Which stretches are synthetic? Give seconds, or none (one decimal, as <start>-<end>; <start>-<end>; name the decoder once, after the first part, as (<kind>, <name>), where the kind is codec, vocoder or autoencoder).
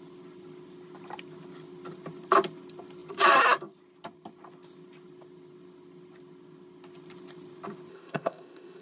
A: 7.9-8.8 (codec, ZipCodec)